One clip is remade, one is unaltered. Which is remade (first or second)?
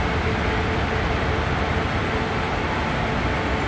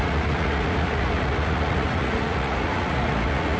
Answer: second